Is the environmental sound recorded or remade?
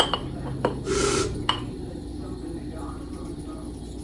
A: recorded